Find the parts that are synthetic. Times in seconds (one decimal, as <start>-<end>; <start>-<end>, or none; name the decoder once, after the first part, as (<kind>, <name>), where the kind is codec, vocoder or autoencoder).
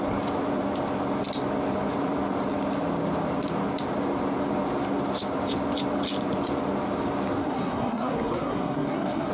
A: 7.4-9.3 (codec, SNAC)